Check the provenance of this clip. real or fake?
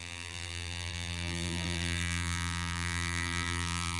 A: fake